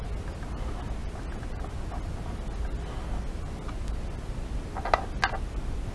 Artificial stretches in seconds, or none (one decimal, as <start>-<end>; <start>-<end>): none